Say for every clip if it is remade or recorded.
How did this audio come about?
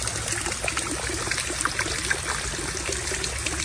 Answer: recorded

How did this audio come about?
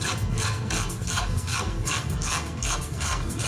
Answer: remade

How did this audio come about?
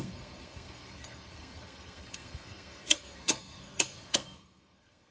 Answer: remade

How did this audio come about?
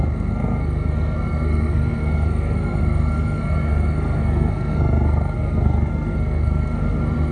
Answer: remade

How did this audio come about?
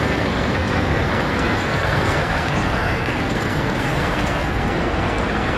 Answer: remade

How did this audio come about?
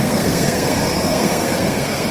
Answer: remade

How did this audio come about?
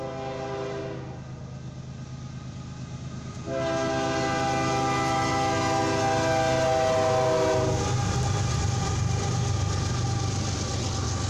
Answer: recorded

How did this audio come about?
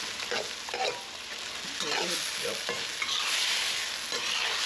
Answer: recorded